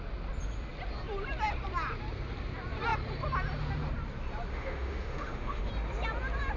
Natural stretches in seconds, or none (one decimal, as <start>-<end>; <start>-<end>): 0.0-4.5; 5.7-6.6